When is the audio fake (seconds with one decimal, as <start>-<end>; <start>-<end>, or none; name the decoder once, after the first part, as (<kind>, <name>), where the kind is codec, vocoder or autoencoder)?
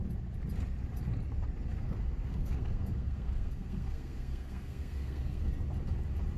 1.7-5.5 (codec, SNAC)